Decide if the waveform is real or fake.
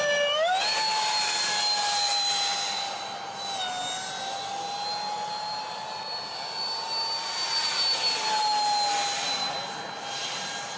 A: real